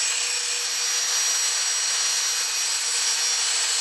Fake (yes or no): no